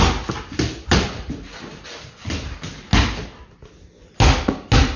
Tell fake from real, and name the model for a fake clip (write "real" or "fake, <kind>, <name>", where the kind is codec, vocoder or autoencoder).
real